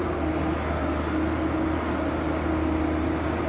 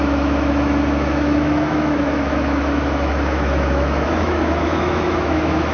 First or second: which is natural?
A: first